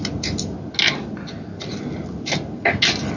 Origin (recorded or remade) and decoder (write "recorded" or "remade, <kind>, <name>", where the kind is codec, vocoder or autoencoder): recorded